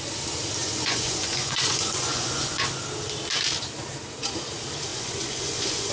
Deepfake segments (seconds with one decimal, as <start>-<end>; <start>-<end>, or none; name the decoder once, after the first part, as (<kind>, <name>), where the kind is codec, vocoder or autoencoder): 0.6-2.6 (vocoder, Vocos); 4.9-5.9

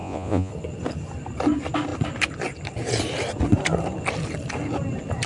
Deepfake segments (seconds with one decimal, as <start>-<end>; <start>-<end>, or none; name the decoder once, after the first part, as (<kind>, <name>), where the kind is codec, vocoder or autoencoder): 0.0-0.5 (vocoder, Vocos)

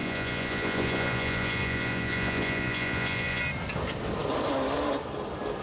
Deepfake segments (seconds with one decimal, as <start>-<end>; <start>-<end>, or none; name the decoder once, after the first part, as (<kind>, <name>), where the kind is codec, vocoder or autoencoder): 0.0-3.4 (vocoder, Vocos)

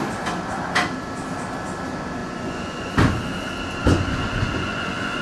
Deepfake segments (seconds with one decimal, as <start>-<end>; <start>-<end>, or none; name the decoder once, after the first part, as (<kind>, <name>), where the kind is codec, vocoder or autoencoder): 2.2-2.9 (vocoder, Vocos); 3.8-5.2